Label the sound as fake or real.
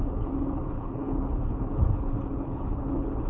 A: fake